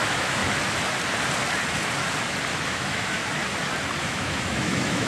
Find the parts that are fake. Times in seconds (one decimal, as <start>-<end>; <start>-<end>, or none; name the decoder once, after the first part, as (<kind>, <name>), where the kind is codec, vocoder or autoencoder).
0.0-0.4 (autoencoder, DAC-VAE); 2.7-3.2; 4.0-5.1